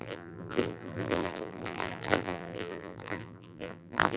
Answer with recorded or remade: remade